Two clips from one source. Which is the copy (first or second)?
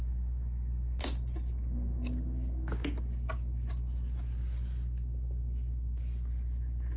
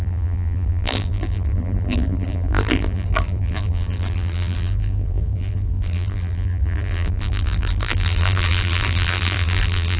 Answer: second